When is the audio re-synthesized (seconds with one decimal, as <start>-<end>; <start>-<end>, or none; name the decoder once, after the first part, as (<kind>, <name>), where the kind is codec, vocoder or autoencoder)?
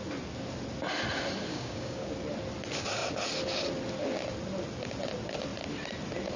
1.5-2.1 (codec, DAC)